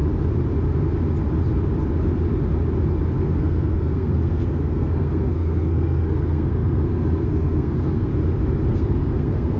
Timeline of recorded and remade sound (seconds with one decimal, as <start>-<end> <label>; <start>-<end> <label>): 0.0-3.3 recorded; 3.3-8.1 remade; 8.1-8.7 recorded; 8.7-9.6 remade